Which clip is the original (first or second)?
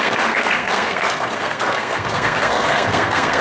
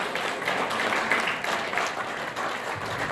second